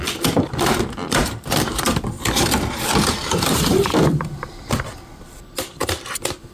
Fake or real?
fake